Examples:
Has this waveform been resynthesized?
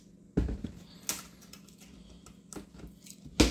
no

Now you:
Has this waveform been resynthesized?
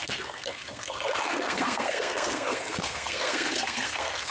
yes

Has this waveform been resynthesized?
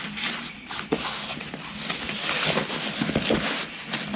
no